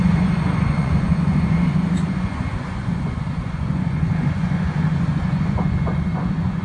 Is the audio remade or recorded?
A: remade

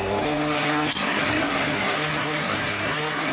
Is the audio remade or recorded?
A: remade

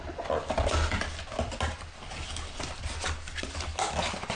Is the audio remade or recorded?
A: recorded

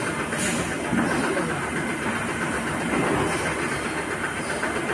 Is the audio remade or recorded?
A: recorded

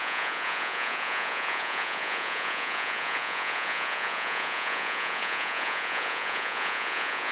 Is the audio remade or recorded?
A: remade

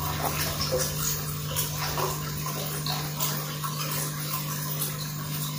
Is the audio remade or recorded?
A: recorded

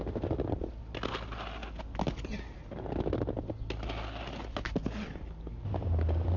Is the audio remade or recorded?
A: recorded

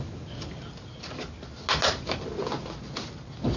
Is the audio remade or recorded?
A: recorded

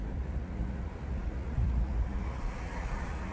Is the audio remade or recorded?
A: remade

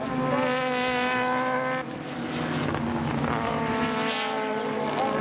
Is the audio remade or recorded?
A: recorded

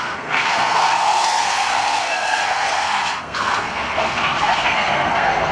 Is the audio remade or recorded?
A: remade